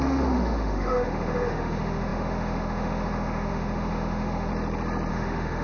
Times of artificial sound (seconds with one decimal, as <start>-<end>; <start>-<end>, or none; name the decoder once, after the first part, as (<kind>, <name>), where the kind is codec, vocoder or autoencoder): 0.0-4.5 (autoencoder, DAC-VAE); 5.1-5.6